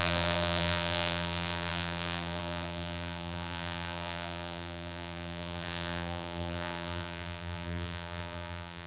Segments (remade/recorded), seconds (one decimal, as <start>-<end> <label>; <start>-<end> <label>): 0.0-8.9 remade